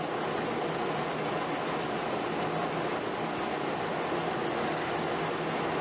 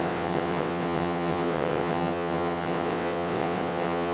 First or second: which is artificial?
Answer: second